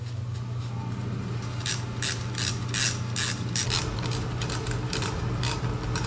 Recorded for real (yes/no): yes